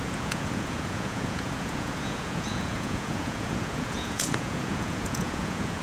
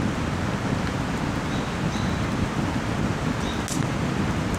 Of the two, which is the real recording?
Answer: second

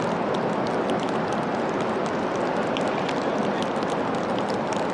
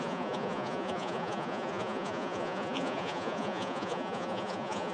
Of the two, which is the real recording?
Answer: first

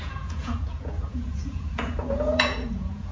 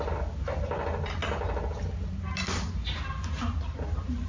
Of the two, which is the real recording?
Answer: second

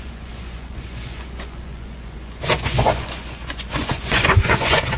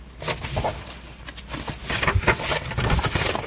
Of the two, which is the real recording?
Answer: second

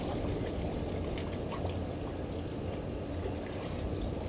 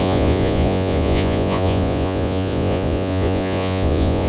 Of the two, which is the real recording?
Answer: first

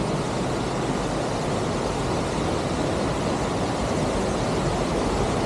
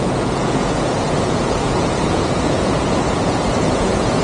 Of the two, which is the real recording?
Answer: first